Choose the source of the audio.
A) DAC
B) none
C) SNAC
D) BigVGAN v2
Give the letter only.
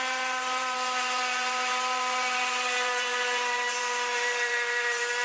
D